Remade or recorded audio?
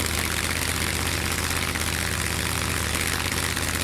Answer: recorded